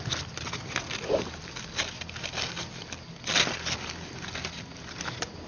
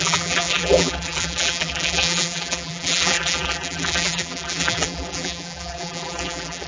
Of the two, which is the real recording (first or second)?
first